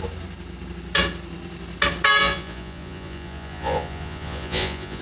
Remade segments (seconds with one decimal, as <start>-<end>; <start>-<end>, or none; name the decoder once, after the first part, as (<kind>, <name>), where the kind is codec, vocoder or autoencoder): 2.2-5.0 (vocoder, Vocos)